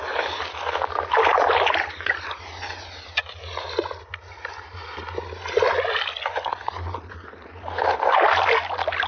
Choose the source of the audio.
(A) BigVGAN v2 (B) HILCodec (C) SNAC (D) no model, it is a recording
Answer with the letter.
D